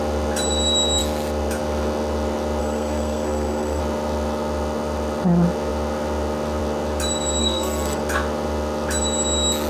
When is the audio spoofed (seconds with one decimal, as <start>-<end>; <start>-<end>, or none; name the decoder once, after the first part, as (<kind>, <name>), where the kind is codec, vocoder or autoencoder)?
2.6-3.8 (codec, SNAC); 7.4-8.0